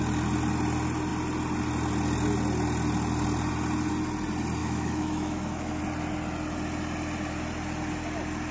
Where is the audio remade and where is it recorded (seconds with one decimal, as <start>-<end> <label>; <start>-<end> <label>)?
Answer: 0.0-4.6 recorded; 4.6-5.8 remade; 5.8-8.5 recorded